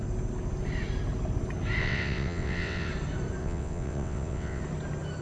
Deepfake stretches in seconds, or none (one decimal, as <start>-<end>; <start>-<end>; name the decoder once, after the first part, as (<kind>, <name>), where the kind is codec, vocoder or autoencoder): 1.8-2.9 (vocoder, WaveNeXt); 3.4-4.6